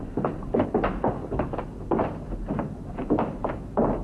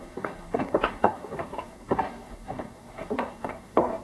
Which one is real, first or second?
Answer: first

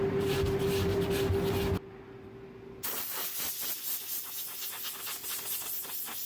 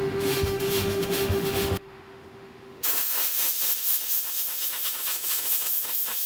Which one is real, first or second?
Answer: first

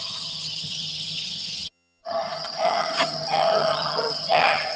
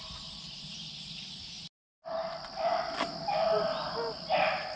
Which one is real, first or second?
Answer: second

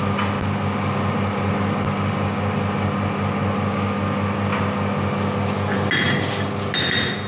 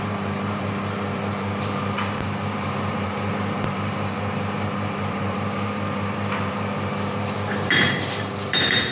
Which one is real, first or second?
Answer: first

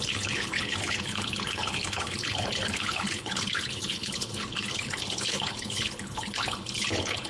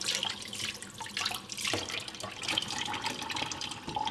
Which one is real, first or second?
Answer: second